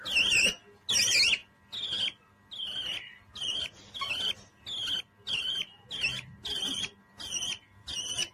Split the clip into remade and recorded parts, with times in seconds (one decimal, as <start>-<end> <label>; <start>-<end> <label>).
0.0-8.3 recorded